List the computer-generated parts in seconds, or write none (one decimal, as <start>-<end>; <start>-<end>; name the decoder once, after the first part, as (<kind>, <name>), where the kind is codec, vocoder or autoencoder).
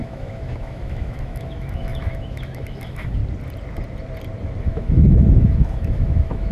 0.0-3.2 (autoencoder, DAC-VAE); 4.6-6.5